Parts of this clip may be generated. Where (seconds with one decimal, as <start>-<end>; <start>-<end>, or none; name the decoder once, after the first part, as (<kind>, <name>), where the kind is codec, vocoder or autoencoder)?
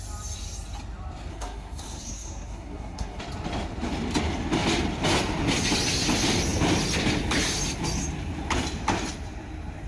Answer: 1.3-3.2 (codec, SNAC)